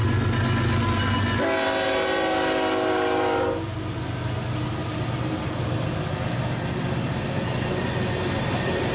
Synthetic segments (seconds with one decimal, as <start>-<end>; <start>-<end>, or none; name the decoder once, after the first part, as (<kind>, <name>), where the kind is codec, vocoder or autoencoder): none